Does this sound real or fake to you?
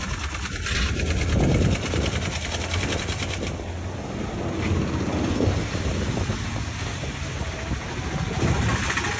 real